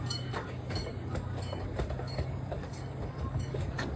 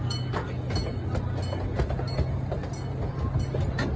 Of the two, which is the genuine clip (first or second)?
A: second